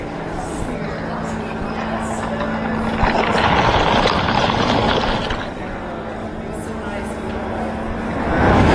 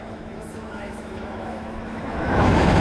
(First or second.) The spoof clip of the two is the second